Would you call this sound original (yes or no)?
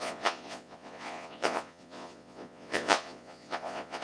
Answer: no